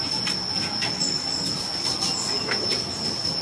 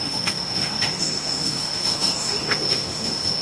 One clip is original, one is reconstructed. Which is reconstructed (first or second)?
second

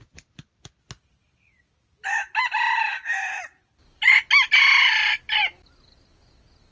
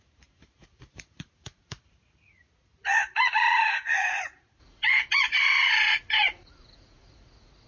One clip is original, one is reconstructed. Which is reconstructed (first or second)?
second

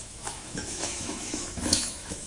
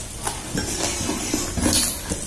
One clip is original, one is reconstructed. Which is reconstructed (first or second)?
first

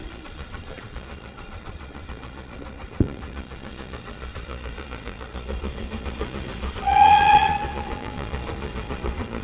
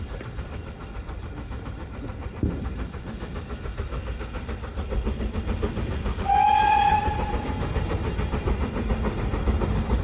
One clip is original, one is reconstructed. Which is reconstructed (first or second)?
first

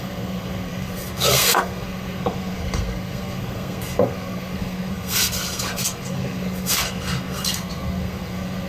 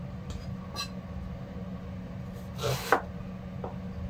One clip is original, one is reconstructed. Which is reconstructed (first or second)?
first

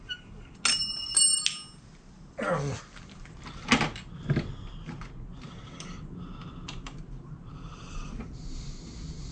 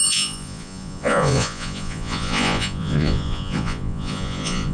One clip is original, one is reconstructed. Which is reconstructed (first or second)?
second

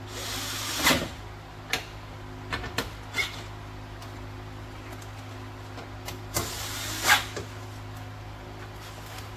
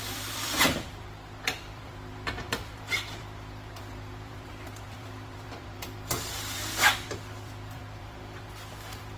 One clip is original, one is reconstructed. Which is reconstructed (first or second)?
second